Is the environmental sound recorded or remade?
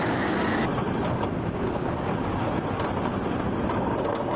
recorded